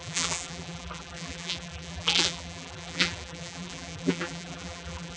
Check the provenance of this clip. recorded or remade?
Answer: remade